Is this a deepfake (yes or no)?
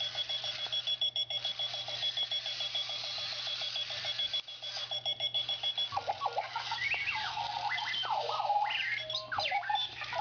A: yes